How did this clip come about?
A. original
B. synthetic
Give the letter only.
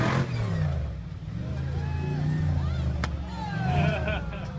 A